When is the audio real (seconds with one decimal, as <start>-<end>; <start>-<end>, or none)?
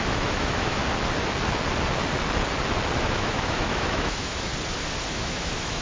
0.8-3.1; 4.5-5.1